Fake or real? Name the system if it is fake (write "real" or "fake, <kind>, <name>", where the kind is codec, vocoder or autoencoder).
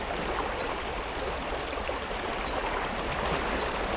real